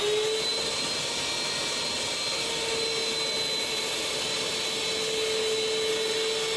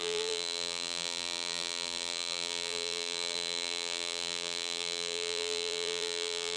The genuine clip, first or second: first